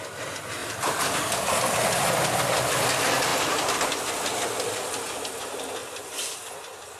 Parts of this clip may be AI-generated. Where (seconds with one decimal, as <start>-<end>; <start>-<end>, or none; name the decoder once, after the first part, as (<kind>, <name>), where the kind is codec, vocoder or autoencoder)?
0.6-1.5 (vocoder, BigVGAN v2); 3.3-5.1; 5.8-6.4